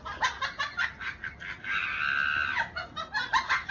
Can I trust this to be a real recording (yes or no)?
yes